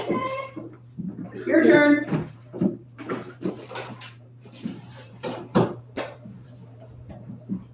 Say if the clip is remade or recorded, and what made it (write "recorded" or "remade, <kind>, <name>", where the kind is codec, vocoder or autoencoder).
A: remade, vocoder, BigVGAN v2